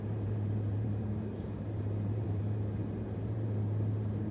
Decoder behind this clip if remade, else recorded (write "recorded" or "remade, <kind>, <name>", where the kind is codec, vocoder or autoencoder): remade, vocoder, BigVGAN v2